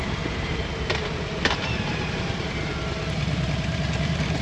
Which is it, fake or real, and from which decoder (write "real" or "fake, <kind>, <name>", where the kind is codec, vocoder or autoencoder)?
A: fake, vocoder, BigVGAN v2